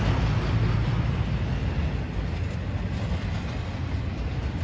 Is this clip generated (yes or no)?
no